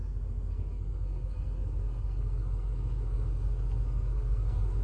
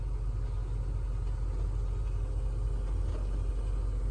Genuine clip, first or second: second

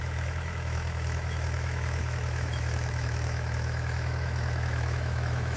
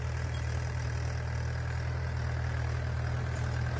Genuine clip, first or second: second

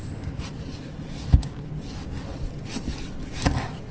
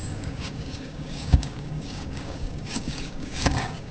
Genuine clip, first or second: first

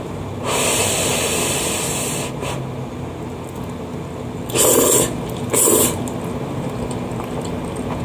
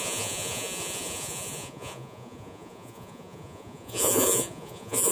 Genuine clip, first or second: first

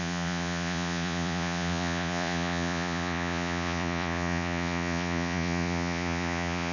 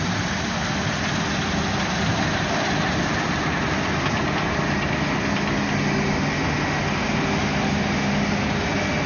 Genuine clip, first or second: second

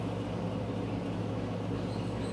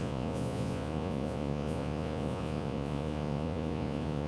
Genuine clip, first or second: first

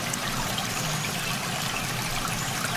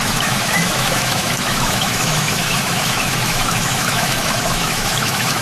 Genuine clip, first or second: first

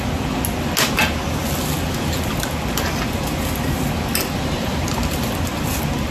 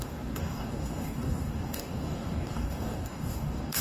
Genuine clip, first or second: first